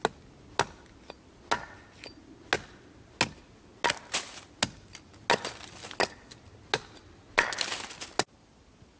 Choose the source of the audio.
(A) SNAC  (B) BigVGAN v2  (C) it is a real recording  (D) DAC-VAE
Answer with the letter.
C